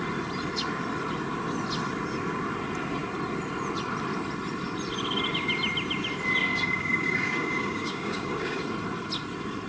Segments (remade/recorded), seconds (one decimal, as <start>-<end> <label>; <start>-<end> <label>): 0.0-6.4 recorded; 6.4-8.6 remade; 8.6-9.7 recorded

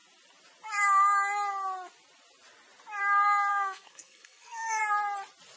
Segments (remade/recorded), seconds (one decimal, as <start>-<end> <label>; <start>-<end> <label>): 0.0-3.5 recorded; 3.5-4.8 remade; 4.8-5.6 recorded

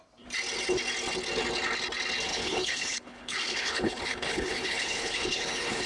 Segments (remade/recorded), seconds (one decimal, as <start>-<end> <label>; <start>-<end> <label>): 0.0-2.3 recorded; 2.3-5.9 remade

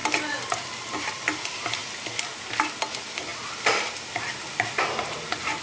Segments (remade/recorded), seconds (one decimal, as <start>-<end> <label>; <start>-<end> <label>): 0.0-5.6 recorded

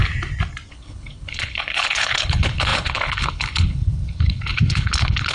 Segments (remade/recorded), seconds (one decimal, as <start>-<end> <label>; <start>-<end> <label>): 0.0-0.7 recorded; 0.7-5.3 remade

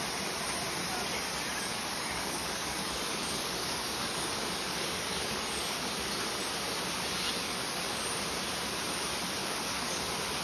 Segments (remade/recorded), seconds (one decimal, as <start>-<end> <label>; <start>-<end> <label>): 0.0-1.7 recorded; 1.7-5.9 remade; 5.9-7.4 recorded; 7.4-8.0 remade; 8.0-9.4 recorded; 9.4-10.0 remade; 10.0-10.4 recorded